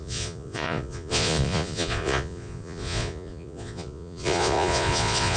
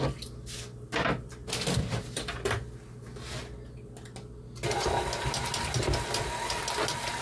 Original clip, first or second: second